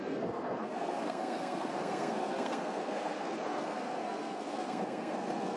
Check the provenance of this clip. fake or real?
fake